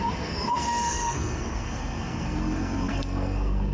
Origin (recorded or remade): remade